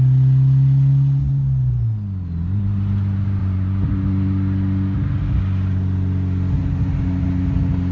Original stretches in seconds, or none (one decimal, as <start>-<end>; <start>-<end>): 0.0-3.4; 3.9-7.9

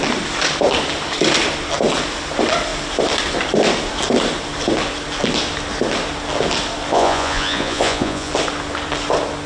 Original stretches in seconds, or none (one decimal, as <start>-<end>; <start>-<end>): 0.0-6.9; 8.3-9.5

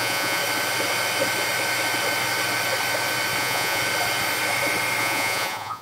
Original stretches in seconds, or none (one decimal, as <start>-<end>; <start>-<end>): 0.4-3.4; 3.8-5.0

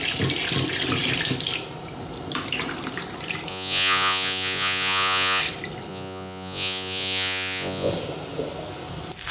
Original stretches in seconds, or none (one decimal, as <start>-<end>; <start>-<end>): 0.0-3.5; 5.4-5.9; 7.9-9.3